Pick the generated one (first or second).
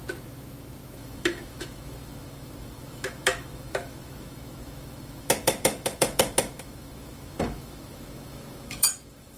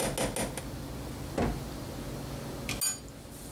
first